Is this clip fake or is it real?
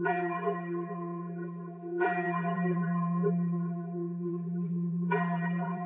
fake